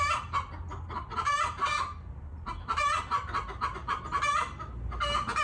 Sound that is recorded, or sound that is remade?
recorded